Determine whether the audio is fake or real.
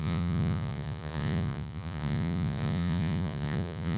fake